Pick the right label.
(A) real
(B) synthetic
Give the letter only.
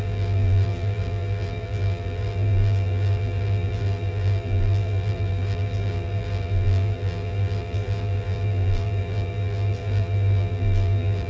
B